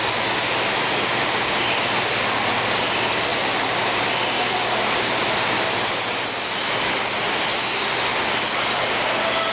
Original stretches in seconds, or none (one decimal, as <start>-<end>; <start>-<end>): 0.0-9.5